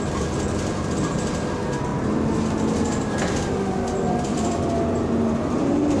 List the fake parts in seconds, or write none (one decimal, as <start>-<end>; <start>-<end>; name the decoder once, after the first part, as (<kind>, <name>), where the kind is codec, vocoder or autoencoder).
none